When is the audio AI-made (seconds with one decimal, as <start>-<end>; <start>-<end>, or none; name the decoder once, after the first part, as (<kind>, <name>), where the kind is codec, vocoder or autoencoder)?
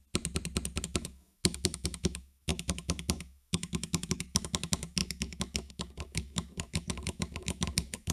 0.8-8.1 (autoencoder, DAC-VAE)